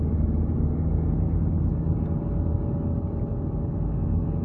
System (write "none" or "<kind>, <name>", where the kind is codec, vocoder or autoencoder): none